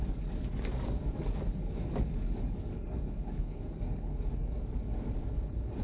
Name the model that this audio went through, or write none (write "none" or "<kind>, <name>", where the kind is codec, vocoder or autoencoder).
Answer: codec, DAC